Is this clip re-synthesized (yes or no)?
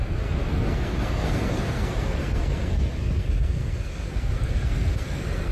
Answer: yes